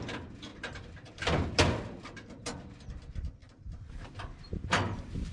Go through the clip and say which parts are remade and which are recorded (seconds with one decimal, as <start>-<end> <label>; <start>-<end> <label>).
0.0-0.5 recorded; 0.5-1.2 remade; 1.2-3.4 recorded; 3.4-4.1 remade; 4.1-5.3 recorded

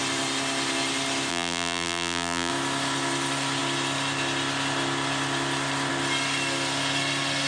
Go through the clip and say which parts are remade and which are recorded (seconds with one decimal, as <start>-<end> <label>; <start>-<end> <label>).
0.0-1.3 recorded; 1.3-2.5 remade; 2.5-7.5 recorded

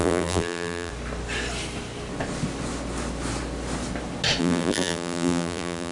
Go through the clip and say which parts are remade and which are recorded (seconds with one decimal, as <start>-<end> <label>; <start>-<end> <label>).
0.0-0.9 remade; 0.9-4.4 recorded; 4.4-5.9 remade

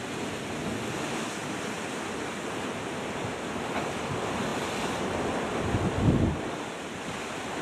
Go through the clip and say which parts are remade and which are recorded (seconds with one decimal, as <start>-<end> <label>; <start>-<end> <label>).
0.0-1.4 recorded; 1.4-2.8 remade; 2.8-7.6 recorded

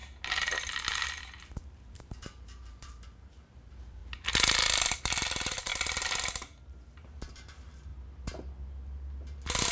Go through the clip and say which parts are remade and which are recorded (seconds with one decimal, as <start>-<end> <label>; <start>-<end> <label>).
0.0-1.6 recorded; 1.6-4.0 remade; 4.0-5.0 recorded; 5.0-5.7 remade; 5.7-7.3 recorded; 7.3-7.9 remade; 7.9-9.7 recorded

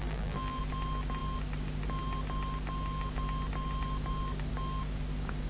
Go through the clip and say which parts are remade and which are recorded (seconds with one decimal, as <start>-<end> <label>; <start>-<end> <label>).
0.0-0.6 remade; 0.6-5.5 recorded